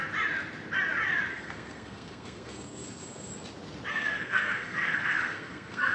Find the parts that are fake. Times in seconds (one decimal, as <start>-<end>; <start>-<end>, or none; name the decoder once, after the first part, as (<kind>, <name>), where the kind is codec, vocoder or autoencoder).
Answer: 1.3-3.3 (codec, SNAC); 3.9-5.9